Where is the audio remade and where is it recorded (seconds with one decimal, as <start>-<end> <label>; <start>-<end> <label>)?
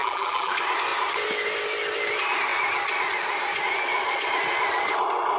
0.0-0.5 remade; 0.5-5.4 recorded